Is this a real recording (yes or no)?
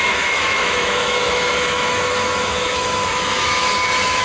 no